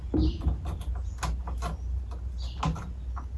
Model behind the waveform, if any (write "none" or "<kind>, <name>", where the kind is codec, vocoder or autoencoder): none